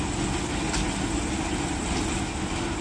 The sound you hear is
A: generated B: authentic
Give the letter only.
B